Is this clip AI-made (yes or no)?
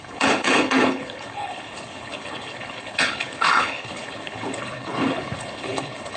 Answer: yes